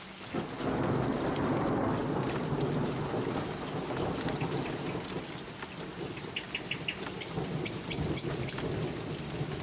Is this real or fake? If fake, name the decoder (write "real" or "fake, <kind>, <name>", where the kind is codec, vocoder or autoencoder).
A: real